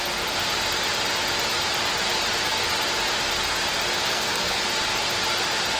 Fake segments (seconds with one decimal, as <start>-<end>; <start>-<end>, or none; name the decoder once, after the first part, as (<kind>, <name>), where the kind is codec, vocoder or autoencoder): 4.1-4.6 (codec, SNAC)